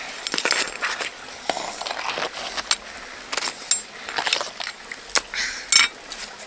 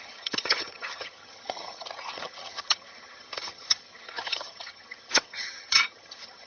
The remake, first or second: second